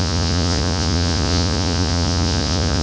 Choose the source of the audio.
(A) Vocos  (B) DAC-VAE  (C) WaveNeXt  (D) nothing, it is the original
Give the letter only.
A